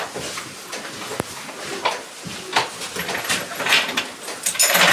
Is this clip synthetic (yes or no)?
no